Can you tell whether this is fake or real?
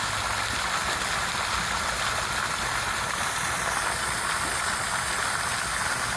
real